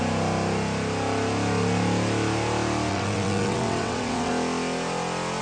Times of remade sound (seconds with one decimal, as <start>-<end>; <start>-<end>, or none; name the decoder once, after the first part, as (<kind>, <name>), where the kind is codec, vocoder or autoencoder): 2.9-4.3 (vocoder, WaveNeXt)